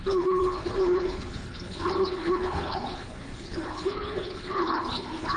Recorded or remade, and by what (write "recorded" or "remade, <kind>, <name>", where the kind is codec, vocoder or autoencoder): remade, codec, HILCodec